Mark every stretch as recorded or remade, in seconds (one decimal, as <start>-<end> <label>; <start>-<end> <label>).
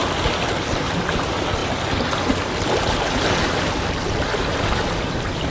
0.0-5.5 recorded